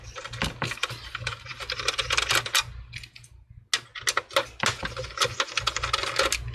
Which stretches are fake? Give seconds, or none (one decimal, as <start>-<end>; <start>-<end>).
none